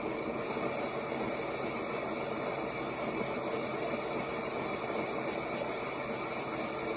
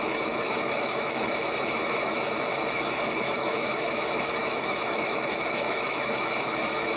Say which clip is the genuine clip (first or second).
first